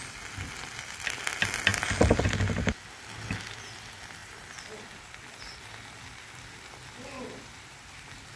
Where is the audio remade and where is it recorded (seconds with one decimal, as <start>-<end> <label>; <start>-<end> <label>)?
0.0-4.2 recorded; 4.2-4.9 remade; 4.9-8.4 recorded